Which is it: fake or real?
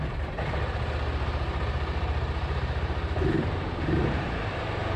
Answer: fake